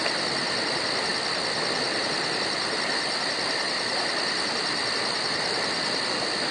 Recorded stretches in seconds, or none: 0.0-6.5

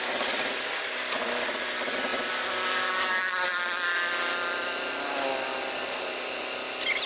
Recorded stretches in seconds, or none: 0.0-2.1; 6.4-7.1

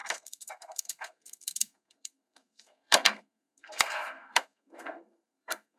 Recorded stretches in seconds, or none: none